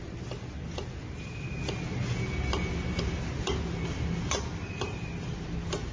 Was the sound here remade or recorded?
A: recorded